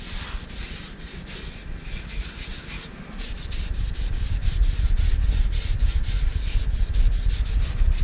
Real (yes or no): yes